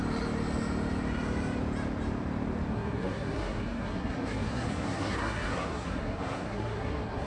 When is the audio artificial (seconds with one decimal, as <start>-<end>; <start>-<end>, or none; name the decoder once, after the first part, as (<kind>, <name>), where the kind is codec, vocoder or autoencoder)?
2.7-7.3 (codec, SNAC)